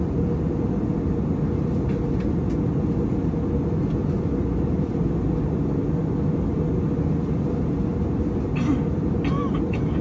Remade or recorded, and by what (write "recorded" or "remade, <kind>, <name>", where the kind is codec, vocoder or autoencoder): recorded